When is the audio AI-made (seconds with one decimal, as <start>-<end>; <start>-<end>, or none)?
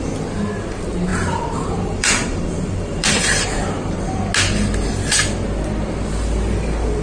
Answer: 1.1-4.2